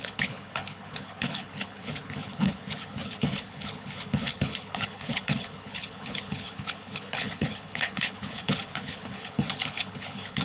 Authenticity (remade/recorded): remade